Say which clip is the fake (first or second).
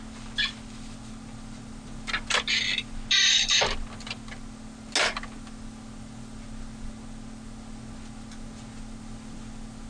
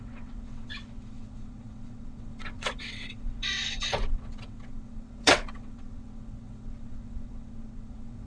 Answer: second